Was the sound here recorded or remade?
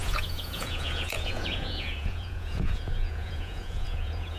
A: remade